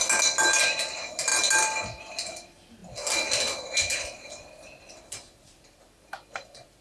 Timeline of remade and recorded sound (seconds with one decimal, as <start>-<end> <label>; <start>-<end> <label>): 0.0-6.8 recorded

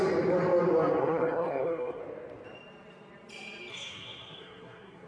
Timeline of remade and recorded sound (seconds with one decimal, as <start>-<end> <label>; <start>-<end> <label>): 0.0-1.0 recorded; 1.0-2.0 remade; 2.0-3.7 recorded; 3.7-5.1 remade

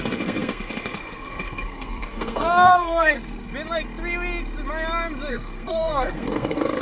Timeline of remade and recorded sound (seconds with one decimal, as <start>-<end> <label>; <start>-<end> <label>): 0.0-3.5 remade; 3.5-5.3 recorded; 5.3-6.8 remade